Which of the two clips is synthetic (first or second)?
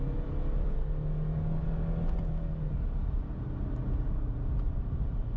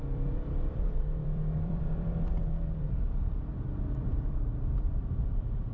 second